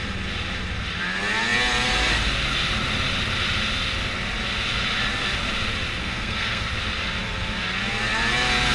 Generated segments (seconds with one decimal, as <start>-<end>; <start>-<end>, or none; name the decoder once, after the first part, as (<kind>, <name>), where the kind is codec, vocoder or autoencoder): 6.0-6.7 (codec, SNAC)